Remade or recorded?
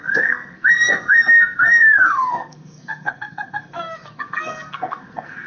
remade